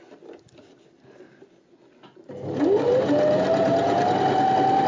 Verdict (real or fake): real